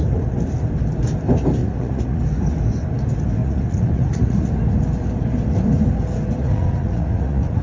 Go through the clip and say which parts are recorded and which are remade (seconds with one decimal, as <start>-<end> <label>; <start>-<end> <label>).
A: 0.0-1.6 recorded; 1.6-2.2 remade; 2.2-3.4 recorded; 3.4-4.5 remade; 4.5-6.4 recorded; 6.4-7.6 remade